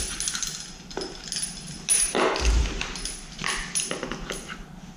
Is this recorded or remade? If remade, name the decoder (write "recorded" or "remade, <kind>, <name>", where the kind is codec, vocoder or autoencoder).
recorded